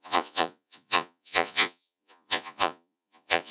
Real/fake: fake